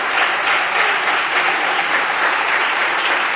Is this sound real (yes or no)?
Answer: no